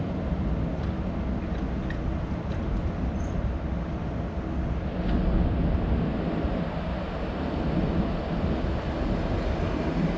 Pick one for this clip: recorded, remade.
recorded